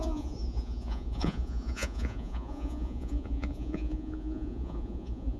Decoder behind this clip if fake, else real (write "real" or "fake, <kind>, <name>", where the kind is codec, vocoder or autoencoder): fake, vocoder, Vocos